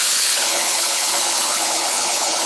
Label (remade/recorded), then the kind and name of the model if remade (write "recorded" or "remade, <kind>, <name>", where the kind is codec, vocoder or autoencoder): remade, codec, HILCodec